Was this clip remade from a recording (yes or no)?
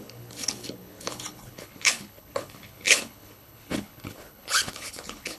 yes